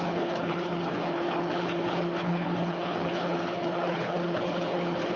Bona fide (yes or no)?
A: no